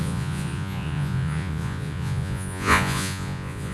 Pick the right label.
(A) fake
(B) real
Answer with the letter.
A